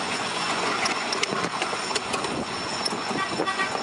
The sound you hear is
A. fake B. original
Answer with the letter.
A